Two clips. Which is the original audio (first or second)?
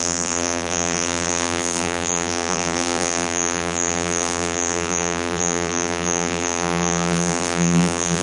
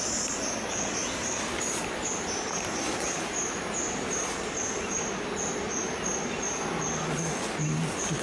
second